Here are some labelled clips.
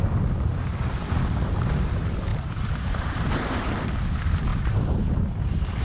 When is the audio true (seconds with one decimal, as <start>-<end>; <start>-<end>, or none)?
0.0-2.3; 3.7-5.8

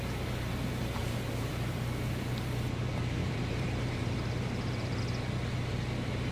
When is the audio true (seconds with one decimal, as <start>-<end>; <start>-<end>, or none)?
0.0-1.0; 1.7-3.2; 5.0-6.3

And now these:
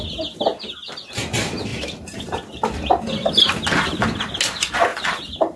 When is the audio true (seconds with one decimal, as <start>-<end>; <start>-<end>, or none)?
0.0-0.5; 1.1-1.7; 3.3-4.9

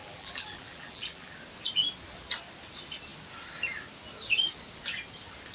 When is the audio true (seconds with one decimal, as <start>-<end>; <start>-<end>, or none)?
1.3-5.5

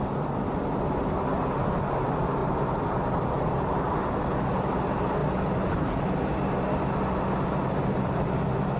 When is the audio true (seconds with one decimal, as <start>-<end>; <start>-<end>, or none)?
0.0-2.4; 4.0-8.8

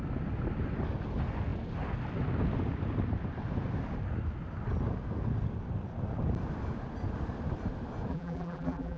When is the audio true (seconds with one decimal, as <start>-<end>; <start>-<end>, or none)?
0.0-8.1

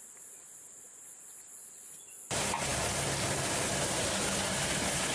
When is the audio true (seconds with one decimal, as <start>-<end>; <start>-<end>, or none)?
0.0-5.1

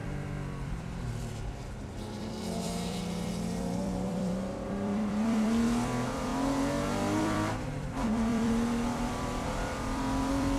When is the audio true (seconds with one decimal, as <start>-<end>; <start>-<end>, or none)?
6.3-7.2